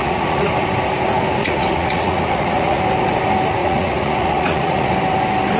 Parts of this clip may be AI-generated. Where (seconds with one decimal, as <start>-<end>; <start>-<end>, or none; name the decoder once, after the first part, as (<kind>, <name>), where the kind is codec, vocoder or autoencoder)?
0.0-0.5 (vocoder, Vocos); 1.4-2.8; 3.6-4.9